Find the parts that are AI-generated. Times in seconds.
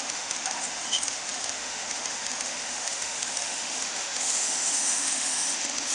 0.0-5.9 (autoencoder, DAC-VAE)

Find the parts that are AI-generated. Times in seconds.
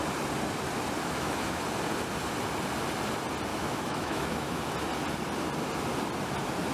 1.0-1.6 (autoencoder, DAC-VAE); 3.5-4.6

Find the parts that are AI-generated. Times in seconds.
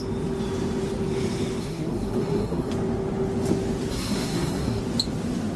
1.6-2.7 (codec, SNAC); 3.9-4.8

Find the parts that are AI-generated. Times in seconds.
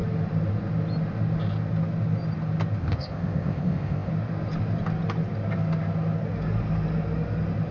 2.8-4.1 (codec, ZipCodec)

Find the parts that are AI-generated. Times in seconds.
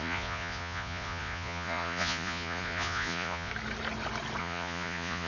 0.0-3.5 (vocoder, Vocos); 4.4-5.3